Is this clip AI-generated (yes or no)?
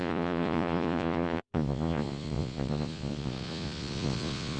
yes